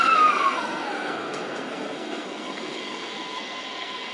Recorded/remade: remade